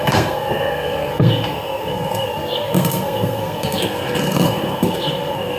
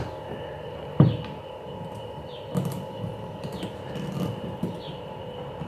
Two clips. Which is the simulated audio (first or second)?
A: first